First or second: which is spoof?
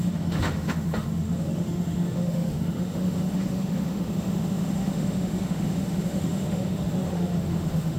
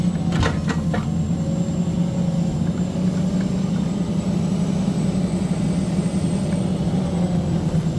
first